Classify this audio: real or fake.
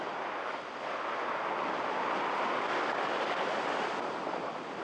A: real